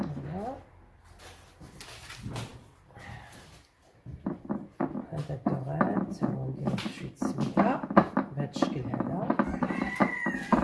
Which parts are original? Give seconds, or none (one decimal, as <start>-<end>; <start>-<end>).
0.0-10.6